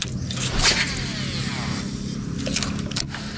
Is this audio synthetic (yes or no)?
no